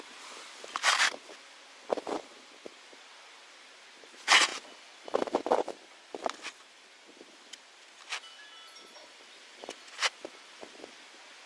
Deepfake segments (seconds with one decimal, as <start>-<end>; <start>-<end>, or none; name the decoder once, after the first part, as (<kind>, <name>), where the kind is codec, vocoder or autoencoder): none